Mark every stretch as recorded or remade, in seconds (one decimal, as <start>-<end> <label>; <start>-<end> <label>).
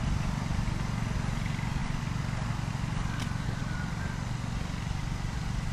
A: 0.0-5.7 recorded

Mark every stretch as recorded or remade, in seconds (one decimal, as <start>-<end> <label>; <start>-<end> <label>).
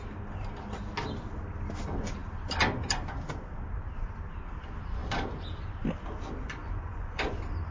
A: 0.0-6.6 recorded; 6.6-7.3 remade; 7.3-7.7 recorded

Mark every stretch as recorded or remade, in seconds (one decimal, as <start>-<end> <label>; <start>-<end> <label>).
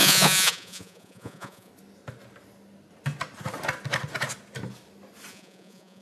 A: 0.0-1.7 remade; 1.7-5.3 recorded; 5.3-6.0 remade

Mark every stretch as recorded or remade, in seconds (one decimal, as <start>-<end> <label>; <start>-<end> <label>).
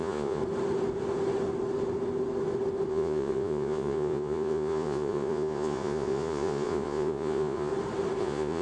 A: 0.0-0.4 remade; 0.4-2.9 recorded; 2.9-7.7 remade; 7.7-8.2 recorded; 8.2-8.6 remade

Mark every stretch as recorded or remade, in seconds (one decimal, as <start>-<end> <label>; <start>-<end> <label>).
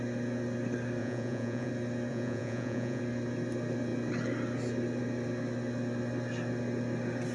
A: 0.0-1.0 recorded; 1.0-1.7 remade; 1.7-2.1 recorded; 2.1-3.0 remade; 3.0-7.3 recorded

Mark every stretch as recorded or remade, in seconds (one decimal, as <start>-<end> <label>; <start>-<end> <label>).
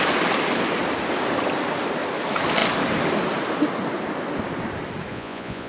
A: 0.0-5.1 recorded; 5.1-5.7 remade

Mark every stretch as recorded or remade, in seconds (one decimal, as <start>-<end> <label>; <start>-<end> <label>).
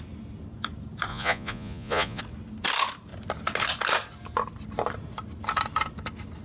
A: 0.0-1.1 recorded; 1.1-2.2 remade; 2.2-6.4 recorded